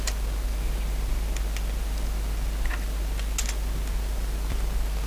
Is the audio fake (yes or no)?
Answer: no